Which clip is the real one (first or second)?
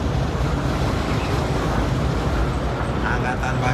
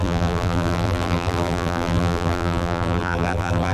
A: first